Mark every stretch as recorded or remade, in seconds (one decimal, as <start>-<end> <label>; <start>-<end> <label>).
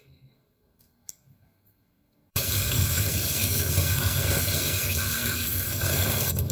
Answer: 0.0-6.5 remade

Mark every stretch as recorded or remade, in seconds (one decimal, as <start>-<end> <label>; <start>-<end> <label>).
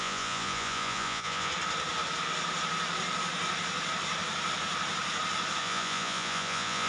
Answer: 0.0-1.5 remade; 1.5-5.6 recorded; 5.6-6.9 remade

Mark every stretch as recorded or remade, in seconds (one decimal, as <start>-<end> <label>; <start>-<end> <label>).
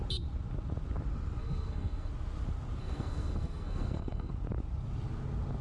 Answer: 0.0-1.4 recorded; 1.4-2.1 remade; 2.1-2.8 recorded; 2.8-4.3 remade; 4.3-5.6 recorded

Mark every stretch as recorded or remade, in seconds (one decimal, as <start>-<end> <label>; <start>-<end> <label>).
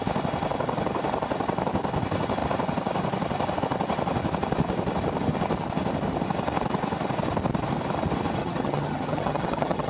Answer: 0.0-8.4 recorded; 8.4-9.9 remade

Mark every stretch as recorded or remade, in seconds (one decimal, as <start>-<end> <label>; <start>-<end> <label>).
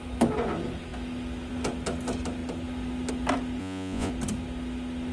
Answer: 0.0-3.6 recorded; 3.6-4.1 remade; 4.1-5.1 recorded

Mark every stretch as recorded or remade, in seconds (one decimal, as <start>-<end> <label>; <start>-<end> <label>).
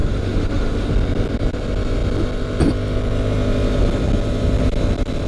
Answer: 0.0-0.9 remade; 0.9-5.3 recorded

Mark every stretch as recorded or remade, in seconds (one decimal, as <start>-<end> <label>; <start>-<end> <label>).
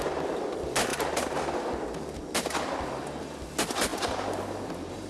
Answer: 0.0-5.1 recorded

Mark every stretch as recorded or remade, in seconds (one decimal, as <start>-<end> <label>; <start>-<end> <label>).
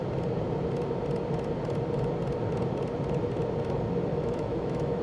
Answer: 0.0-4.1 recorded; 4.1-5.0 remade